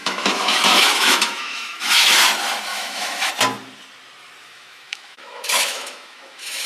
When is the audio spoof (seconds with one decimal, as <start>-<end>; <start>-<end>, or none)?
0.0-2.1; 2.7-3.3; 4.4-6.7